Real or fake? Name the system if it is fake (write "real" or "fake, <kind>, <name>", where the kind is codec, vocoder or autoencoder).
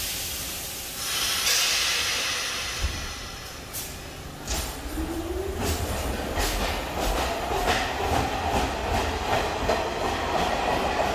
real